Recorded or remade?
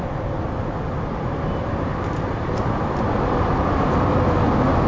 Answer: recorded